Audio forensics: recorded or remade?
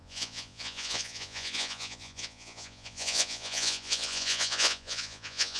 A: remade